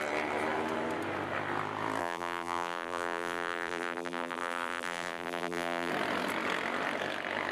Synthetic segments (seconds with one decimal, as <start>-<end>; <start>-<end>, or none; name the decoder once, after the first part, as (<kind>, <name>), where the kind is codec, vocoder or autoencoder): 2.0-5.9 (vocoder, BigVGAN v2)